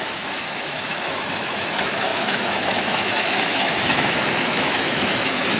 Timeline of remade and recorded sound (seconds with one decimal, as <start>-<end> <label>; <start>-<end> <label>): 0.0-5.6 remade